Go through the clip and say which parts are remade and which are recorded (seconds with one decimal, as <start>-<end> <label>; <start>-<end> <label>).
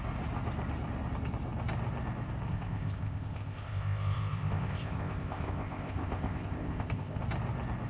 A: 0.0-2.5 recorded; 2.5-7.2 remade; 7.2-7.9 recorded